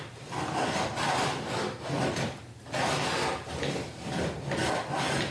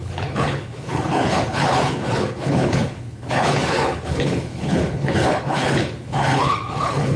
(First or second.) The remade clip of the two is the second